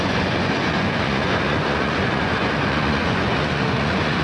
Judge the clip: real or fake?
fake